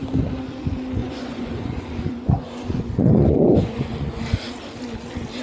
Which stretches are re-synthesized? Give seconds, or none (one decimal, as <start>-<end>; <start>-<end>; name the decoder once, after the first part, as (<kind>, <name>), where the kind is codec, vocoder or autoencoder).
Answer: 1.0-4.2 (vocoder, Vocos)